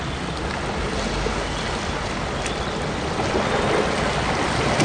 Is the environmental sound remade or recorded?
recorded